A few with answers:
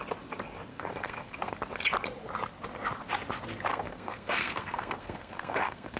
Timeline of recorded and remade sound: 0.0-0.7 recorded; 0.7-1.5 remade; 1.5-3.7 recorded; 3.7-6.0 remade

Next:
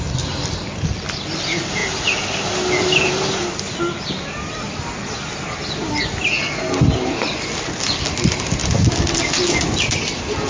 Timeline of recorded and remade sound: 0.0-1.8 remade; 1.8-3.1 recorded; 3.1-8.6 remade; 8.6-10.1 recorded; 10.1-10.5 remade

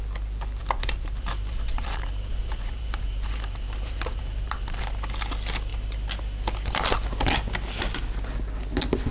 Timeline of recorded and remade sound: 0.0-0.6 recorded; 0.6-4.8 remade; 4.8-9.1 recorded

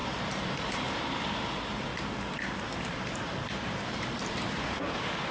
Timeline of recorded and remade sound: 0.0-1.2 remade; 1.2-1.9 recorded; 1.9-5.3 remade

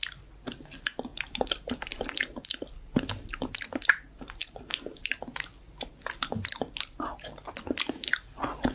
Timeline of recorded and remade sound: 0.0-1.1 recorded; 1.1-2.0 remade; 2.0-8.7 recorded